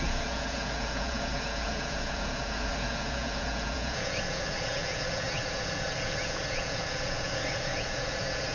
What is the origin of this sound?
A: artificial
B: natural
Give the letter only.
A